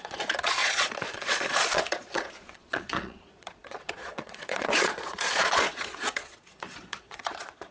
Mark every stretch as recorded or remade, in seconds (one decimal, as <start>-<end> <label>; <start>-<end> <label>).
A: 0.0-7.7 remade